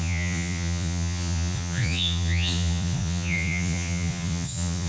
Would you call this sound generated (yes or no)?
yes